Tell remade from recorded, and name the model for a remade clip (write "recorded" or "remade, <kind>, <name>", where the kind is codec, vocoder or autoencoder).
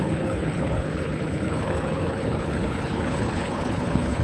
remade, codec, HILCodec